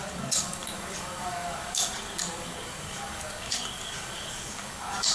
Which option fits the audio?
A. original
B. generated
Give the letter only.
B